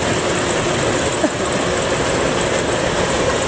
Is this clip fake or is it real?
real